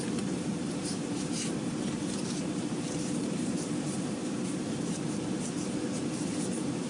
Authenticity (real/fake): fake